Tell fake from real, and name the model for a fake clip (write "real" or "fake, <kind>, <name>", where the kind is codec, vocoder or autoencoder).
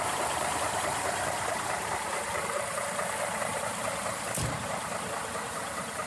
fake, vocoder, BigVGAN v2